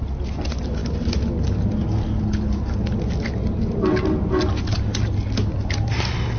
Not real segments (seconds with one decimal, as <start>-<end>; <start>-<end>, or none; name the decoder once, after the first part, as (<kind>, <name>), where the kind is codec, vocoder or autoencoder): none